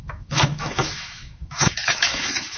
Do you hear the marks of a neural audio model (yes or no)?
yes